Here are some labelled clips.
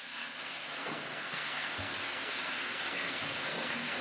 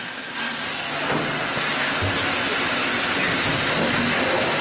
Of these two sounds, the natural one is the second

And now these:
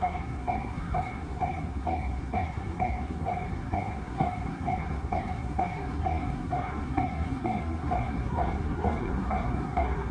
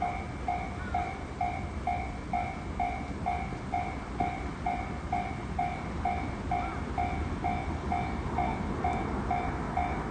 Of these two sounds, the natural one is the second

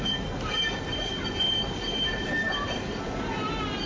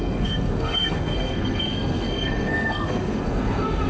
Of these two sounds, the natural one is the first